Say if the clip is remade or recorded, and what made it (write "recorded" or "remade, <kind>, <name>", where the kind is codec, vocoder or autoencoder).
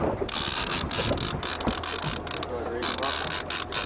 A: recorded